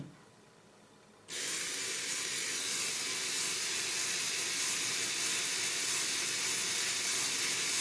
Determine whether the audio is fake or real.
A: real